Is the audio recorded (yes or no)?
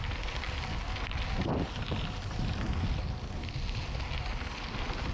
yes